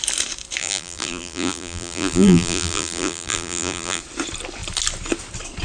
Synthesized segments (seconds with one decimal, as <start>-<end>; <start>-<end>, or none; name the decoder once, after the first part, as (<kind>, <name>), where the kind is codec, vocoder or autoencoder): 0.6-4.0 (vocoder, BigVGAN v2)